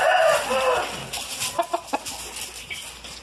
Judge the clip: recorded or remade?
recorded